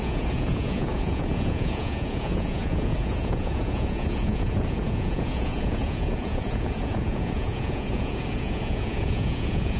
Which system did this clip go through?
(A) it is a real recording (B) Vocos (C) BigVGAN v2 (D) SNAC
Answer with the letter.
B